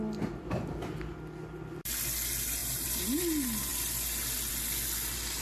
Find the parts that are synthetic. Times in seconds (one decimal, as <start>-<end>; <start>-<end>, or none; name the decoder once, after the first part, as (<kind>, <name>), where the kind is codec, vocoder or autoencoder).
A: 2.6-3.2 (vocoder, BigVGAN v2)